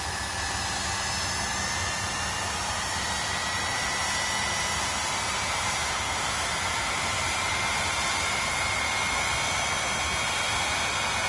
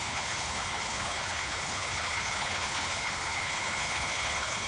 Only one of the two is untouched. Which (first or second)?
first